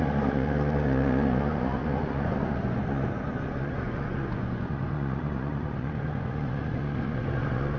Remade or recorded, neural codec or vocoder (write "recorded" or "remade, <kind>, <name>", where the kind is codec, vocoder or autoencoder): remade, vocoder, Vocos